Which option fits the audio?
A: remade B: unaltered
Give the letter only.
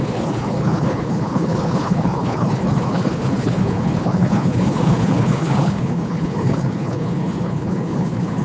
A